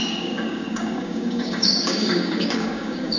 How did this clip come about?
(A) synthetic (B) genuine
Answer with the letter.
A